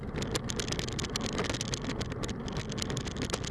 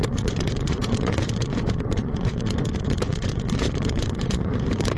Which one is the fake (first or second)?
second